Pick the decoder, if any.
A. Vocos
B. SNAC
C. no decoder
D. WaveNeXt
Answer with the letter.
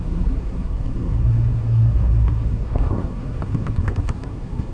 B